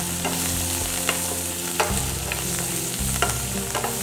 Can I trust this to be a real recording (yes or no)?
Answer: yes